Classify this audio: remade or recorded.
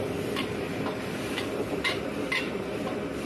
remade